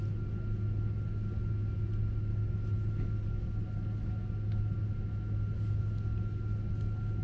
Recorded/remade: recorded